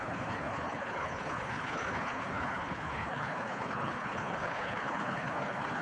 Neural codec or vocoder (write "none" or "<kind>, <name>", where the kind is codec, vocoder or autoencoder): codec, HILCodec